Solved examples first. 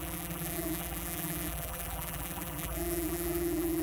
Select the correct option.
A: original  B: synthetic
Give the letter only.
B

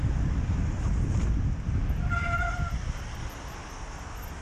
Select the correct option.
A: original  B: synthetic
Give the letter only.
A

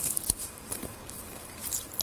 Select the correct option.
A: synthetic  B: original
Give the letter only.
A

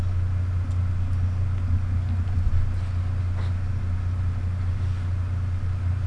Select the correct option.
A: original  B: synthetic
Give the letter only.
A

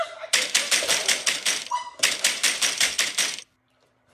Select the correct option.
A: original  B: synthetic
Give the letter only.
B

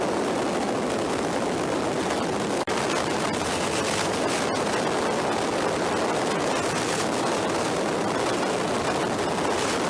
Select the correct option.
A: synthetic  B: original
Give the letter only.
B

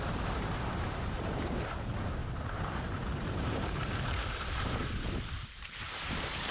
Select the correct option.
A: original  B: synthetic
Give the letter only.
B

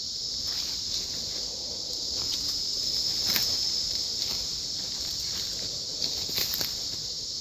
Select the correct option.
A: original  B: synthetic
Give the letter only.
B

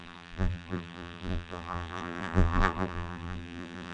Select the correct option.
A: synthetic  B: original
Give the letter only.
A